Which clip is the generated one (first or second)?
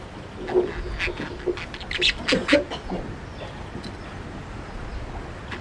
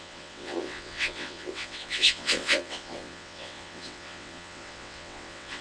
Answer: second